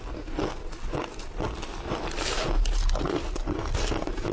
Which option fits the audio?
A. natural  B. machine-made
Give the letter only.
A